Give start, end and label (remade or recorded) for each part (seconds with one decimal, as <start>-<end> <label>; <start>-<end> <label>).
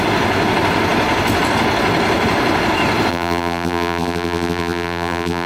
0.0-3.1 recorded; 3.1-5.5 remade